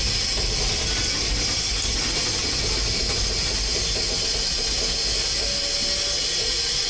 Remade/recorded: recorded